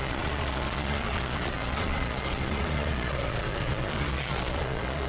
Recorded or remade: remade